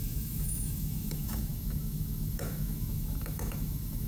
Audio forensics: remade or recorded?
remade